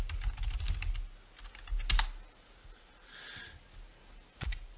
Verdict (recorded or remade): recorded